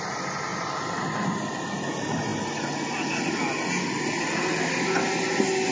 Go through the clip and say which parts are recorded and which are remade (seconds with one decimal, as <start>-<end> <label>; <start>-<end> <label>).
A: 0.0-5.7 recorded